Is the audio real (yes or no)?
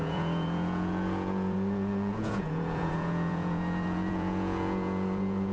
no